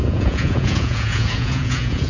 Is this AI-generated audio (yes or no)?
yes